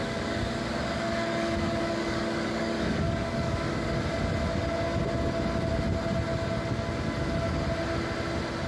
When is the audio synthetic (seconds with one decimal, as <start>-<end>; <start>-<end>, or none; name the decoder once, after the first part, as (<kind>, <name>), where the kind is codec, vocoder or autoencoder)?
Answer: 0.0-4.0 (codec, DAC)